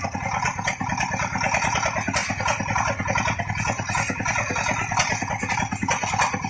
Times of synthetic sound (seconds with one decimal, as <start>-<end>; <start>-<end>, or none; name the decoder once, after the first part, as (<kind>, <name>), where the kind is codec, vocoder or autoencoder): none